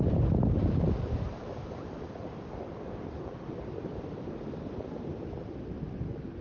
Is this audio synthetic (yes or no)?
no